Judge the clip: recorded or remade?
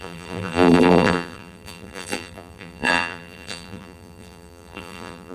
remade